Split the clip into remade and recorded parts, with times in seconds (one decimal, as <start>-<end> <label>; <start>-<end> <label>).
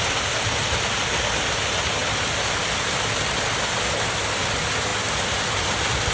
0.0-6.1 recorded